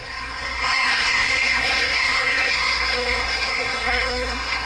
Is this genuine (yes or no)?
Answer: no